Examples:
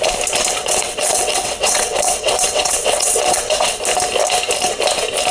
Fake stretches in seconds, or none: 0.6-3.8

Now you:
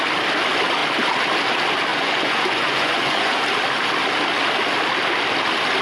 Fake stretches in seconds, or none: 1.9-3.4

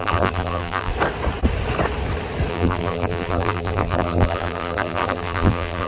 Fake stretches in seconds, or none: 0.0-0.9; 2.5-5.9